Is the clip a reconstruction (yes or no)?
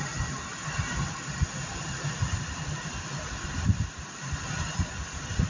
no